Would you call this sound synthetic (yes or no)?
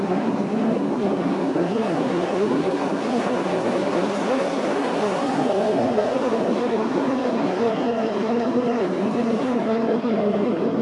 yes